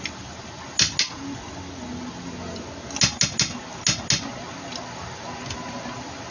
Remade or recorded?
recorded